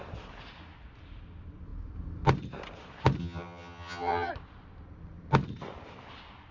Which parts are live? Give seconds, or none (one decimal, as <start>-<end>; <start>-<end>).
0.0-3.2; 4.3-6.5